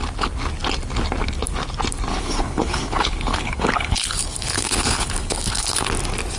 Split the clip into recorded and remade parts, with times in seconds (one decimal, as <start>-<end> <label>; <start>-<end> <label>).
0.0-2.1 recorded; 2.1-5.9 remade; 5.9-6.4 recorded